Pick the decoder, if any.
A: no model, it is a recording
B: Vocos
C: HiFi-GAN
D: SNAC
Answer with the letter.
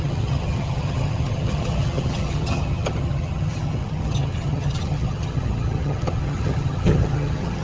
C